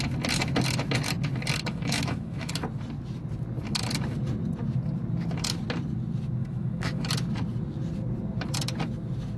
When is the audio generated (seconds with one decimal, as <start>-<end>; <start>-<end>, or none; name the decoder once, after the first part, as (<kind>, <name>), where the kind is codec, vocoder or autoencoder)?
1.7-2.5 (autoencoder, DAC-VAE); 6.4-7.1